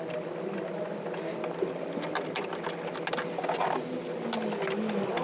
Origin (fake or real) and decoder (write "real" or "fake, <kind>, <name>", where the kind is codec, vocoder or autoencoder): real